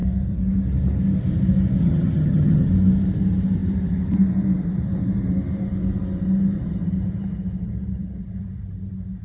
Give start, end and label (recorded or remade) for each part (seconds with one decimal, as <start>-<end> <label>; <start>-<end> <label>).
0.0-1.8 recorded; 1.8-2.7 remade; 2.7-9.2 recorded